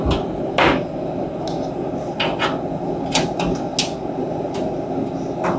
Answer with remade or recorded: recorded